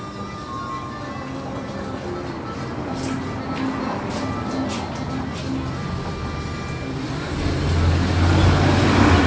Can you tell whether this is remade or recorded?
recorded